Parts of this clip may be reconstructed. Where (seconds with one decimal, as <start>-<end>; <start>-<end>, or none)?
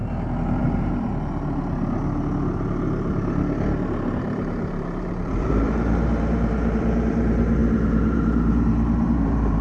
0.6-1.1; 4.2-9.6